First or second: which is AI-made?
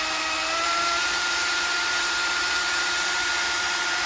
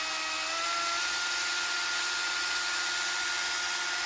first